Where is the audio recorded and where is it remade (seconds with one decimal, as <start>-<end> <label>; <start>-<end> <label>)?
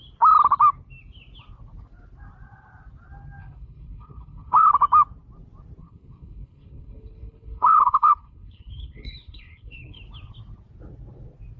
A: 0.0-3.4 recorded; 3.4-4.7 remade; 4.7-5.8 recorded; 5.8-10.0 remade; 10.0-11.6 recorded